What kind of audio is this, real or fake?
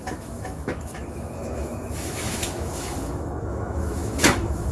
fake